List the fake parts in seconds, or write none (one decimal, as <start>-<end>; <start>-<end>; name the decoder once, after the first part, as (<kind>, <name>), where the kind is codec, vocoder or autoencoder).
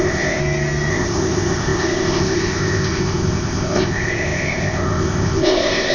0.0-0.4 (codec, ZipCodec); 0.9-5.9